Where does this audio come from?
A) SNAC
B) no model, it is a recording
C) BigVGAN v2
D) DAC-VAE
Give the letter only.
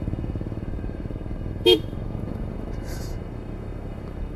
D